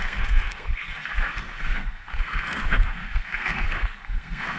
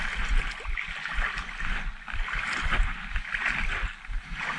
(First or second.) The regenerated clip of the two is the first